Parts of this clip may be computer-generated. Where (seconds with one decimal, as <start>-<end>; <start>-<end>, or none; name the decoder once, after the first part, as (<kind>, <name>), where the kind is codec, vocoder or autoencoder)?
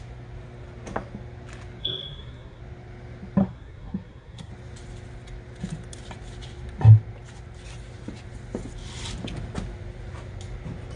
1.8-2.6 (codec, SNAC); 3.4-4.5